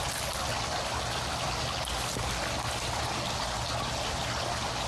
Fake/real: real